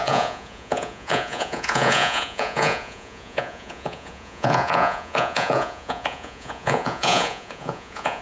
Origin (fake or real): fake